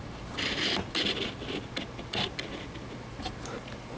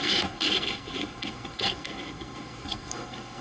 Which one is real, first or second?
first